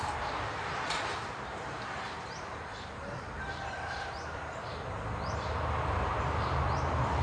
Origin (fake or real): fake